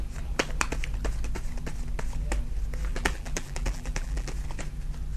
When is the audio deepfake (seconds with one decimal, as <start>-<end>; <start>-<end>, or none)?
2.9-4.3